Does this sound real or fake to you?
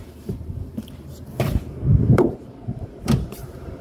fake